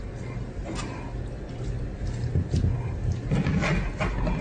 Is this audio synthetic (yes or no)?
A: no